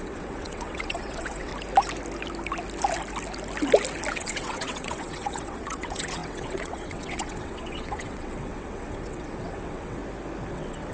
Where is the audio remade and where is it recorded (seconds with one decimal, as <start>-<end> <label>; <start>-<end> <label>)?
0.0-1.5 remade; 1.5-4.1 recorded; 4.1-10.0 remade; 10.0-10.5 recorded; 10.5-10.9 remade

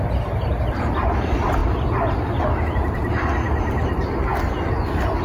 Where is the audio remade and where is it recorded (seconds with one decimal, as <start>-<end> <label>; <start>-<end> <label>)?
0.0-5.2 recorded